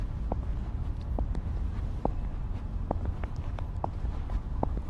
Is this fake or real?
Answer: real